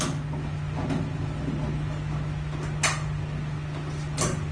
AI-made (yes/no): no